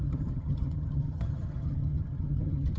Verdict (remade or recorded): remade